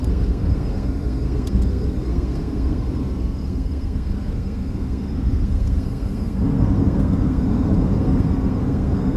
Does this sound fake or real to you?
fake